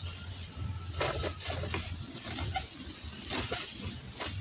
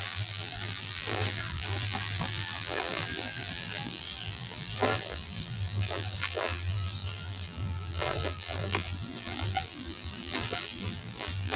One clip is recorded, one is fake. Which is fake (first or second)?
second